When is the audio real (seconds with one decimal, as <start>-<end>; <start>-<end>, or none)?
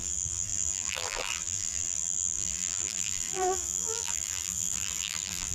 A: none